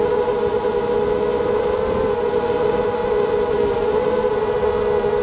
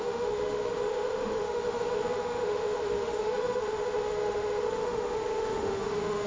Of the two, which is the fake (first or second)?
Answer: second